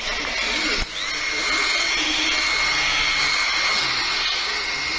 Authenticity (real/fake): real